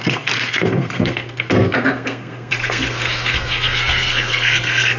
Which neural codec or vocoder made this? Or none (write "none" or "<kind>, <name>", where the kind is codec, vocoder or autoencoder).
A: codec, SNAC